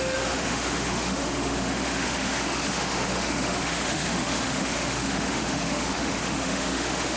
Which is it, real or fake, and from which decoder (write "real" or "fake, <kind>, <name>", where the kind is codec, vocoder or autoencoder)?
fake, autoencoder, DAC-VAE